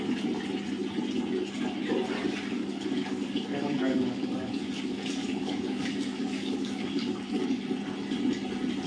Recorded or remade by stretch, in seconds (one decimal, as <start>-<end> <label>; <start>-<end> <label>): 0.0-2.5 recorded; 2.5-7.6 remade; 7.6-8.9 recorded